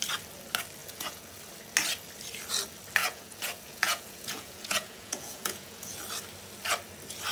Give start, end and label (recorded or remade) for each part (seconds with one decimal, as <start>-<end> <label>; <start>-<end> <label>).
0.0-0.8 recorded; 0.8-1.4 remade; 1.4-3.0 recorded; 3.0-6.0 remade; 6.0-7.3 recorded